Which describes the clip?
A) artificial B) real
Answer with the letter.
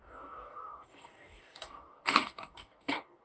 A